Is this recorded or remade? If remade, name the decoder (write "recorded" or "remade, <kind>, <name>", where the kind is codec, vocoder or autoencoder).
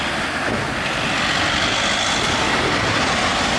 recorded